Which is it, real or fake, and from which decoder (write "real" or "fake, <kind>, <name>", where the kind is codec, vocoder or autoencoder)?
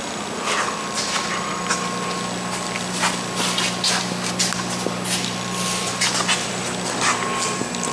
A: real